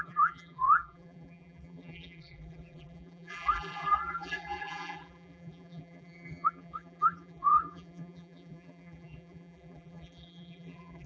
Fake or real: fake